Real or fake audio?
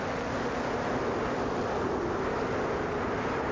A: real